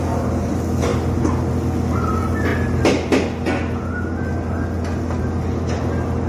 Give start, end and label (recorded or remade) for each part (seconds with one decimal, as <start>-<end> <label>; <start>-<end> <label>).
0.0-6.3 recorded